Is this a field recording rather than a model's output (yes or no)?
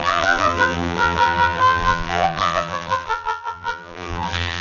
no